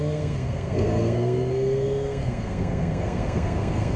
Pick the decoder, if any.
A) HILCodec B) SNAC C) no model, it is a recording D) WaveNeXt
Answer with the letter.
B